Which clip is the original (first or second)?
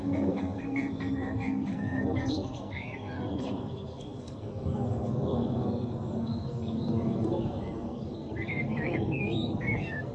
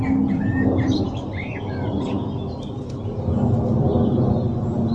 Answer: second